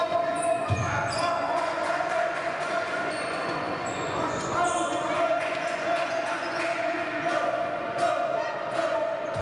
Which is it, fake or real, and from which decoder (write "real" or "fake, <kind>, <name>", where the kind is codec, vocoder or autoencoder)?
fake, vocoder, Vocos